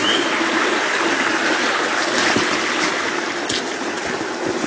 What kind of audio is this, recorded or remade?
recorded